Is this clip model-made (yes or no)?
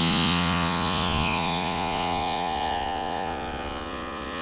yes